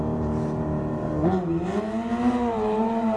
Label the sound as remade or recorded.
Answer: remade